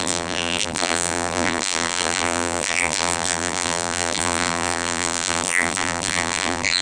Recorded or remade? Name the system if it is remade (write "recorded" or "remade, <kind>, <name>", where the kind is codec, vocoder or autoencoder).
remade, vocoder, BigVGAN v2